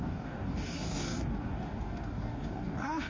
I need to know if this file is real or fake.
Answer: fake